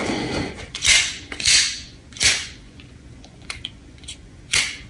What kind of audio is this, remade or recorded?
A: remade